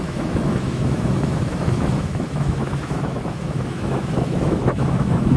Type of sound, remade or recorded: remade